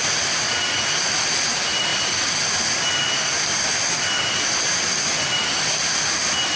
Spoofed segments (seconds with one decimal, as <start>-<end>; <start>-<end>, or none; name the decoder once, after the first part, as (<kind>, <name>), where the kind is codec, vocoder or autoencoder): none